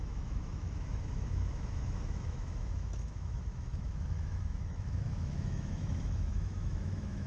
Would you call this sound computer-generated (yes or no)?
yes